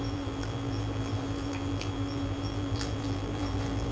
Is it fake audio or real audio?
fake